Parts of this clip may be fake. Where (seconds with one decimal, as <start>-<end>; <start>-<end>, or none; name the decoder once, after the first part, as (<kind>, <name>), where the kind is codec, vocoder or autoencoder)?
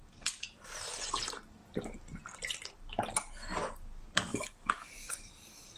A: 4.3-5.3 (codec, DAC)